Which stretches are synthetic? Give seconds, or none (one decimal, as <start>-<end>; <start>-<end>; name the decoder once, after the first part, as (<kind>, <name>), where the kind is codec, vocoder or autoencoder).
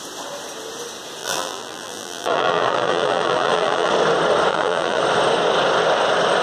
1.2-3.9 (vocoder, BigVGAN v2); 4.5-5.0